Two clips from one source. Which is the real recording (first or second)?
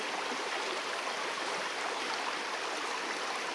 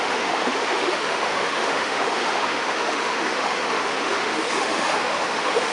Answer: first